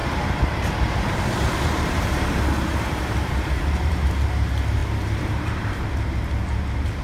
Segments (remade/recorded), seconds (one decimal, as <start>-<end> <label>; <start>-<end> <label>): 0.0-4.1 remade; 4.1-4.8 recorded; 4.8-5.9 remade; 5.9-7.0 recorded